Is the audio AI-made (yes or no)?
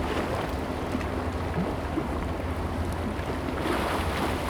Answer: no